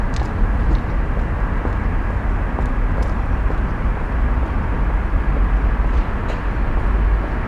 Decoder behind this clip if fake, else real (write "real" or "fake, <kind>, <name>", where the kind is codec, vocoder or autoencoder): real